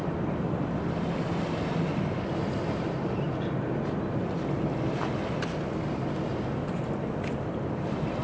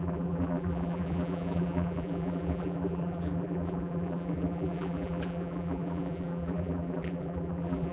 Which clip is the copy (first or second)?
second